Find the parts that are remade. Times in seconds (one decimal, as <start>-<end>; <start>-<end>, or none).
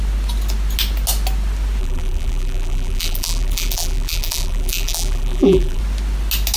1.8-5.8